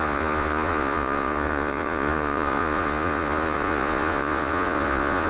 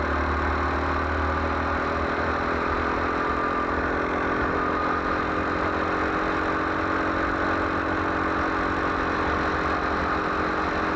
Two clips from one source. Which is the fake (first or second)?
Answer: first